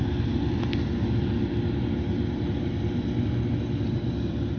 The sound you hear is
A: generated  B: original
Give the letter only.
B